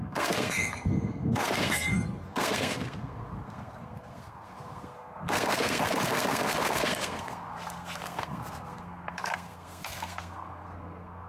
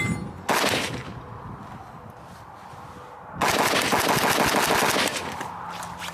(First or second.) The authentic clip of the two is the second